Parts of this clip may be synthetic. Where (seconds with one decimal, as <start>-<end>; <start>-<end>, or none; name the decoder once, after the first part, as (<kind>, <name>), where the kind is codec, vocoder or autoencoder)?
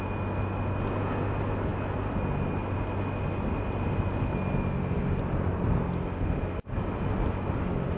none